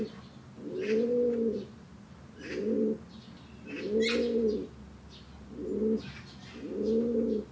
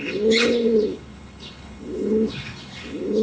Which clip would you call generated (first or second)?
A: second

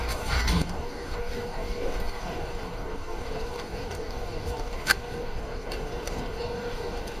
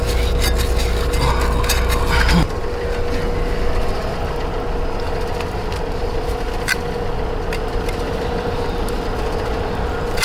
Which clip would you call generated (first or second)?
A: first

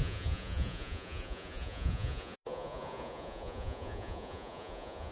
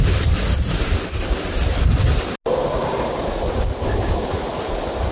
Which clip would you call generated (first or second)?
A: first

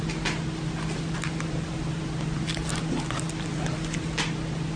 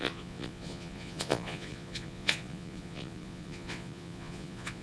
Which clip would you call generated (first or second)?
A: second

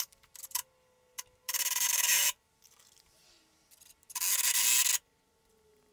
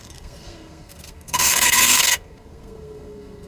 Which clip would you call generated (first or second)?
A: second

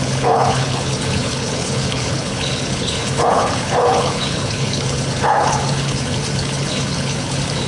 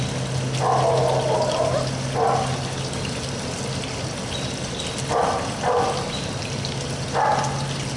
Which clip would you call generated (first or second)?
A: first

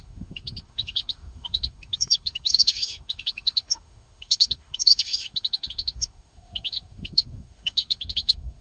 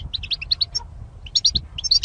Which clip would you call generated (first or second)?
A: first